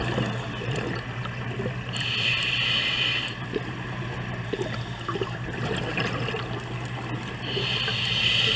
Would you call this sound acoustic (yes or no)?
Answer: yes